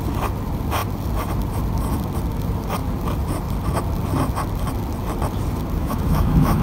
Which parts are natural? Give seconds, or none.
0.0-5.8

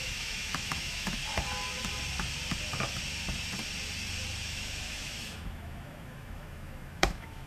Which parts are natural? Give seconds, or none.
1.2-4.4

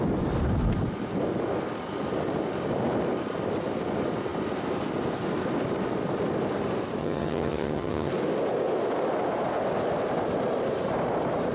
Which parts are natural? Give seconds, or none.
0.0-7.0; 8.1-11.5

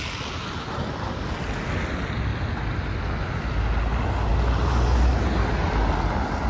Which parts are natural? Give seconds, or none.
0.0-6.5

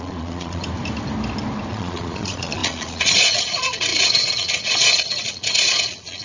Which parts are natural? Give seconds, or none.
0.6-1.7

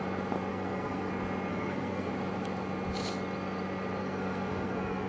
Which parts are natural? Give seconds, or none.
0.0-0.5; 1.1-1.5; 2.1-4.0

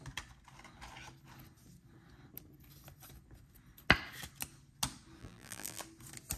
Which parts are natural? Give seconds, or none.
0.0-5.2; 5.8-6.4